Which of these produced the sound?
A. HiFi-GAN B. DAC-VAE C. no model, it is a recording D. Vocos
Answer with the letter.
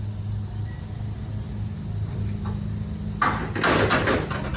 C